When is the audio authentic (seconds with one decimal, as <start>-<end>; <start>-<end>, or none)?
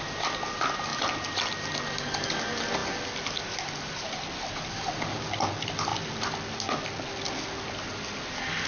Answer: 0.0-8.7